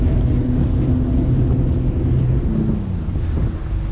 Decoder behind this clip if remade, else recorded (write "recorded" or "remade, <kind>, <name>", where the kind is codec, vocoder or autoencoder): recorded